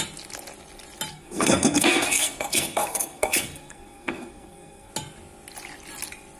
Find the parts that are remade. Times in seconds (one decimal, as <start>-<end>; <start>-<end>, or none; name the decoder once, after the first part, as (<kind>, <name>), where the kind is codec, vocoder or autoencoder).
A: 1.1-4.9 (codec, SNAC)